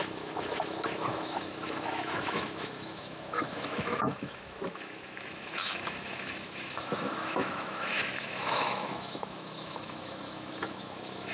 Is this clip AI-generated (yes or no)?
yes